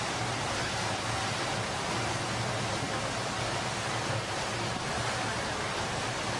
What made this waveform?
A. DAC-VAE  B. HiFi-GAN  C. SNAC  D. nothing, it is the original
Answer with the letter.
D